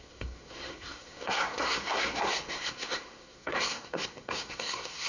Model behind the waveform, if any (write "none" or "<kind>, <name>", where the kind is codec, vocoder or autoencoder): codec, SNAC